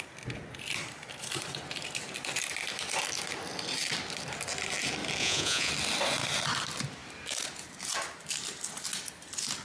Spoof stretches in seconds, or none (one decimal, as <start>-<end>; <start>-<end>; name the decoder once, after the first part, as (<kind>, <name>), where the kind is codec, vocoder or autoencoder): 5.2-5.7 (vocoder, Vocos)

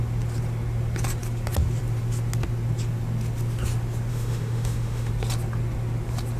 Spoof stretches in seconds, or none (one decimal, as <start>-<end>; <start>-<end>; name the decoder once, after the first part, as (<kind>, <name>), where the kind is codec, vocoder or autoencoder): 4.1-5.1 (autoencoder, DAC-VAE)

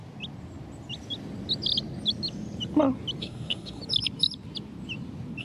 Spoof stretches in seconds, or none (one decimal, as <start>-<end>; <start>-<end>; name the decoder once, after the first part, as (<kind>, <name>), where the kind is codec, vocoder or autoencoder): 3.2-3.8 (codec, DAC)